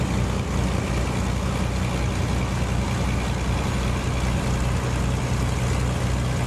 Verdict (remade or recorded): recorded